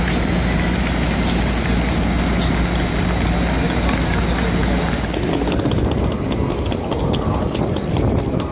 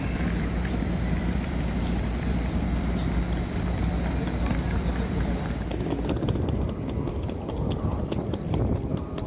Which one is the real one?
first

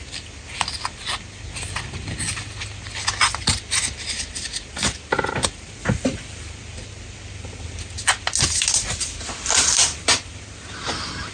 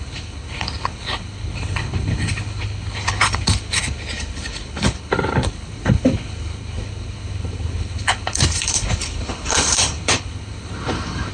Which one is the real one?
first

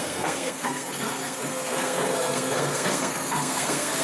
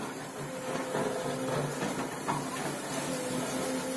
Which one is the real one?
second